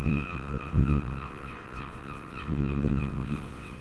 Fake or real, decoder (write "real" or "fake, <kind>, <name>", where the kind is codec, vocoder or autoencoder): fake, vocoder, WaveNeXt